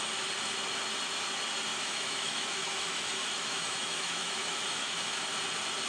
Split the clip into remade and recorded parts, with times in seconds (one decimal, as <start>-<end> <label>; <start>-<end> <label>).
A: 0.0-1.7 recorded; 1.7-5.2 remade; 5.2-5.9 recorded